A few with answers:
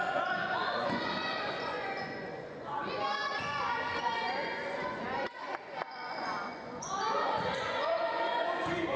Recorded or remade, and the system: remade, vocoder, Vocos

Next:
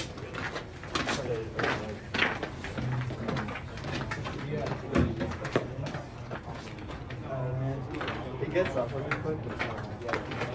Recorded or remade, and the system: recorded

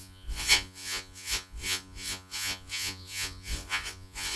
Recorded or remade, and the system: remade, vocoder, Vocos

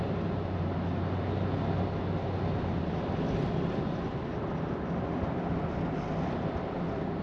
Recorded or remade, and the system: recorded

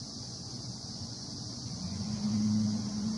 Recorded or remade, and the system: remade, vocoder, Vocos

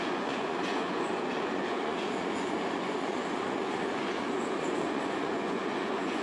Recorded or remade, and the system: remade, vocoder, Vocos